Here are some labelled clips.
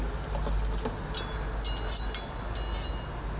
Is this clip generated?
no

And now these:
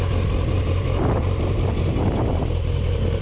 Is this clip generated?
no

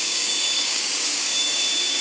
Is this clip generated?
yes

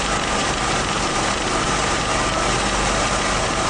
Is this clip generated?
yes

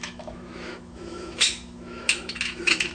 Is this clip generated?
yes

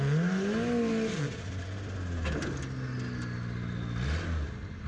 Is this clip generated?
no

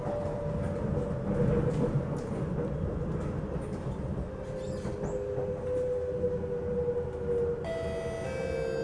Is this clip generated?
no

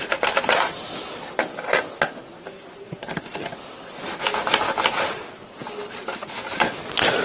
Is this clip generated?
no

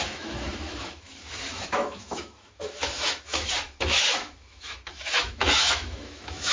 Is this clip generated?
yes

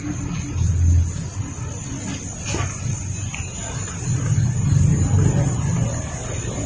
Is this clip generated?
no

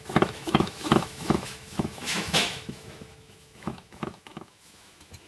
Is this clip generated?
yes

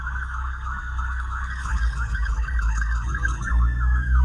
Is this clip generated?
yes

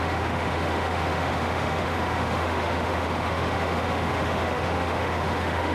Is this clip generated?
yes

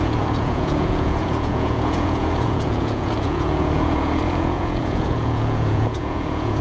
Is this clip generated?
yes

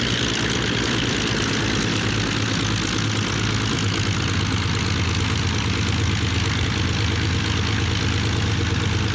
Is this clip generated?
no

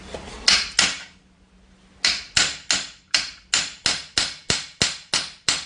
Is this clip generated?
no